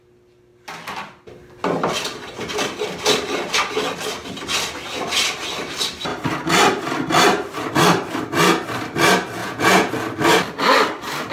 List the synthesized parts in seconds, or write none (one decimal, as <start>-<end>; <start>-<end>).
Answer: 9.4-9.9